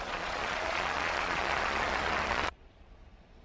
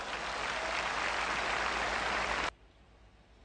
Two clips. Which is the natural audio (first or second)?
second